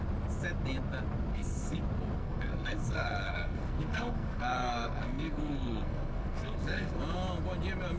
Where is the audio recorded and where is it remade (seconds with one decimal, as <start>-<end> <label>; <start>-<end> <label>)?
0.0-1.3 recorded; 1.3-1.8 remade; 1.8-2.2 recorded; 2.2-7.0 remade; 7.0-8.0 recorded